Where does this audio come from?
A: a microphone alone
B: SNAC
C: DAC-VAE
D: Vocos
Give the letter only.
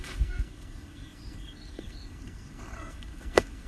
B